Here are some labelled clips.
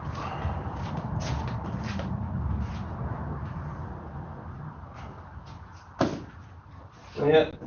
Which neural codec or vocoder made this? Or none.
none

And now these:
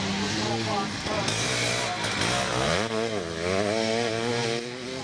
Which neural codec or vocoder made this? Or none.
none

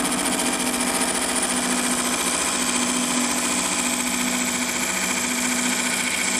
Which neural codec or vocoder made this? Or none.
none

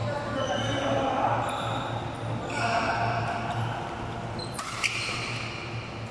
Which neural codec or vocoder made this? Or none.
none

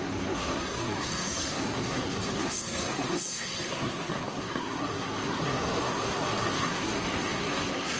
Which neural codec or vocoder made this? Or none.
codec, SNAC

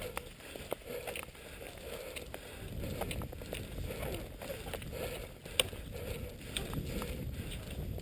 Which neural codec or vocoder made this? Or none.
none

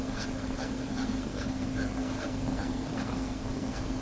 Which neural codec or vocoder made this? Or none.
codec, SNAC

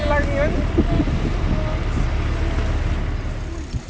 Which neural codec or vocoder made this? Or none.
none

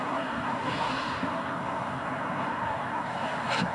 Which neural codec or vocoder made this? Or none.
codec, SNAC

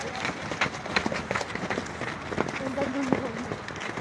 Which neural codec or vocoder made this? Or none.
none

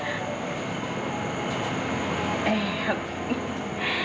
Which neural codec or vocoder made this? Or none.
none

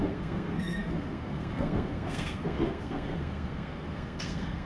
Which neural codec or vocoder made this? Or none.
codec, SNAC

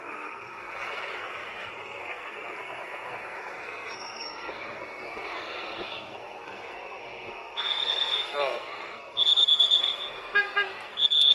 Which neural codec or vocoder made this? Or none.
codec, SNAC